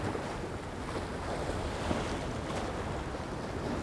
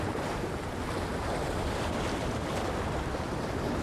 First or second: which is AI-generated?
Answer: second